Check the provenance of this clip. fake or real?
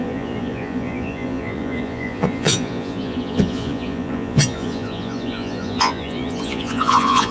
fake